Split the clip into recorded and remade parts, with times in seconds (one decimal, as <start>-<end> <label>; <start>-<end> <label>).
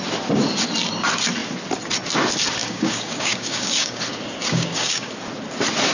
0.0-2.6 recorded; 2.6-4.0 remade; 4.0-4.4 recorded; 4.4-5.1 remade; 5.1-5.9 recorded